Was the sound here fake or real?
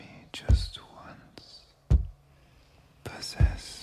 real